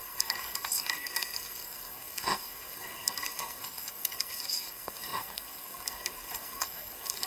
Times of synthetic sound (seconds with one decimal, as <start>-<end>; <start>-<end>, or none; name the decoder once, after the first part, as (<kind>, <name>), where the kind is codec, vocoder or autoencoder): 0.0-7.3 (codec, SNAC)